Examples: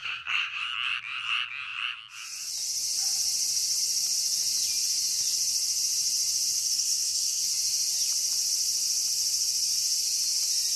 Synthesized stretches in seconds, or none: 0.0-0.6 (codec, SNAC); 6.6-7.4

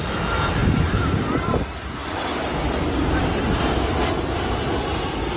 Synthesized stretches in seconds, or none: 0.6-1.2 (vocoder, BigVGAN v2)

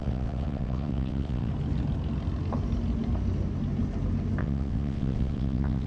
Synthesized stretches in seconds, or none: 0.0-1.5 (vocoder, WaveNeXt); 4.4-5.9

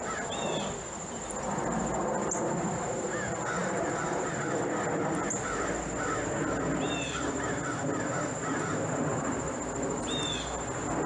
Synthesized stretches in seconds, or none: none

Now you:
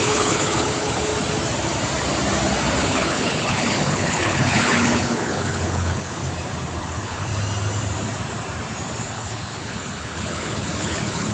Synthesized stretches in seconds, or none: 0.0-1.1 (codec, HILCodec); 2.8-6.2; 6.8-7.3; 9.0-11.3